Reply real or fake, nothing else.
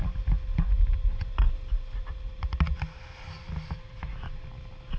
real